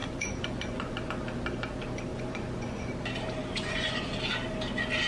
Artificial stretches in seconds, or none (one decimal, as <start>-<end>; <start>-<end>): 0.0-1.0; 2.1-2.9; 3.4-4.1